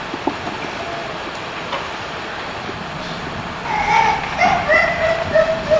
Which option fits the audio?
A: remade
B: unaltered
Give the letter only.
B